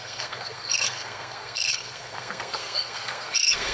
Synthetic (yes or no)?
yes